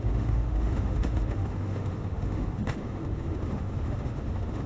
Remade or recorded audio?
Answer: remade